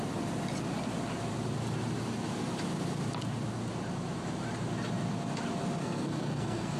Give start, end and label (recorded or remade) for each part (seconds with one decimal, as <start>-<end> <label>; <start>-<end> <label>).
0.0-5.8 recorded; 5.8-6.8 remade